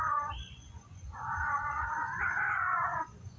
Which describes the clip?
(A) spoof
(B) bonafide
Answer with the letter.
A